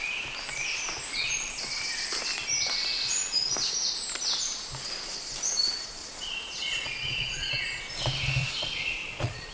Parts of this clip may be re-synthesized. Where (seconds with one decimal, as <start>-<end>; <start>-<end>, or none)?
6.0-7.8; 8.4-9.5